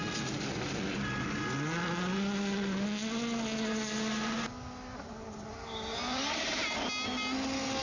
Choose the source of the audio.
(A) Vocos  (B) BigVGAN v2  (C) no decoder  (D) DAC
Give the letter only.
C